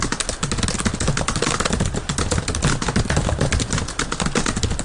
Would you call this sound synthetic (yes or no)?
no